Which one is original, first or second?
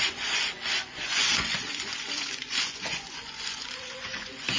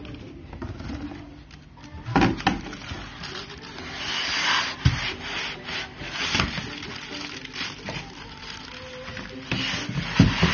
second